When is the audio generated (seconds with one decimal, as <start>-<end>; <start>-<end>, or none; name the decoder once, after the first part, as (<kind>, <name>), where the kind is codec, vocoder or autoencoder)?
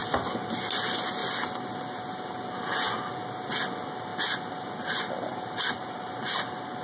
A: none